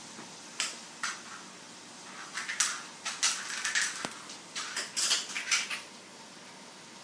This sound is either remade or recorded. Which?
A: recorded